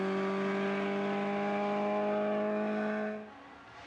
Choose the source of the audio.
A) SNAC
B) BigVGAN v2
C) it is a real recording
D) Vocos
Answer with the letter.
C